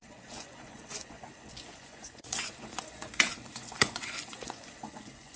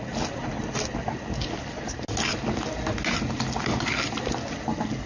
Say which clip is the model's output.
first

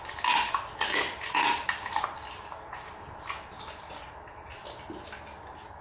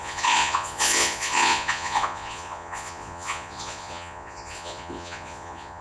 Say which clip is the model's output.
second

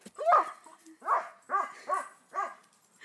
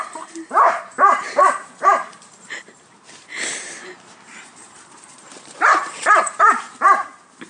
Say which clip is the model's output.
second